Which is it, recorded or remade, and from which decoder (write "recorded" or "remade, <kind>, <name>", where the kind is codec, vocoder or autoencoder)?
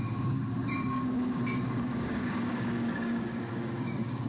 remade, codec, DAC